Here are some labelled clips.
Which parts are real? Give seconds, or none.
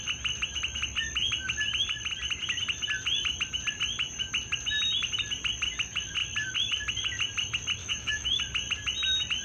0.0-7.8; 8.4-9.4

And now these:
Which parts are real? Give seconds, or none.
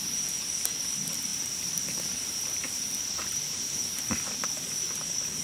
0.0-1.3; 4.5-5.4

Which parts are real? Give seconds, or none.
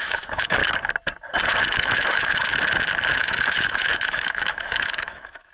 0.6-1.6; 2.5-3.1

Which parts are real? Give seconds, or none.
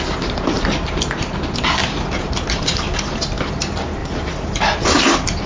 0.0-5.5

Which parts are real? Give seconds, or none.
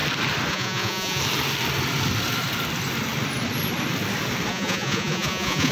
0.0-0.5; 1.2-4.5